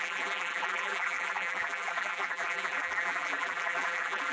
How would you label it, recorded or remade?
remade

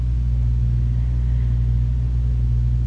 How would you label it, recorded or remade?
recorded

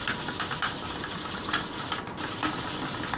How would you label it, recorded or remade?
recorded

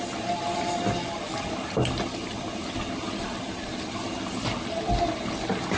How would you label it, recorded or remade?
recorded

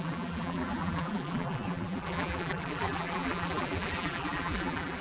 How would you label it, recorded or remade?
remade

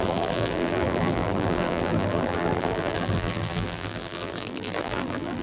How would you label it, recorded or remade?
remade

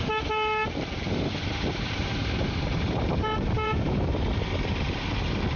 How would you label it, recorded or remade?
remade